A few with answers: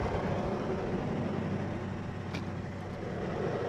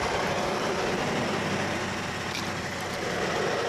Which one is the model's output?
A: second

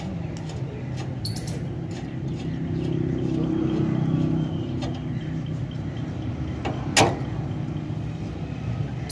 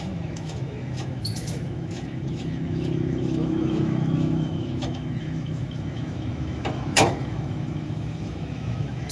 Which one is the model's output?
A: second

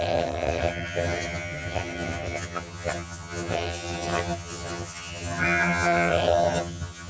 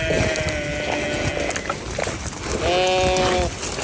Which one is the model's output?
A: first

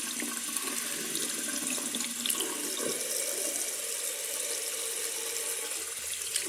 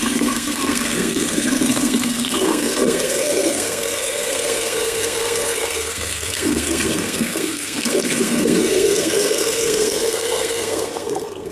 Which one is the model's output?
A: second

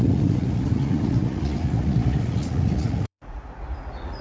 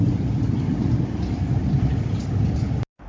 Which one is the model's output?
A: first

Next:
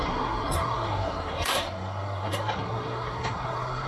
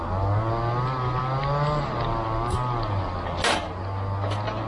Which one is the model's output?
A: first